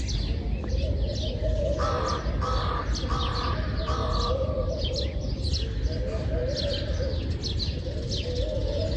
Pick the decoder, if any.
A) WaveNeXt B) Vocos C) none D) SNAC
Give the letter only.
C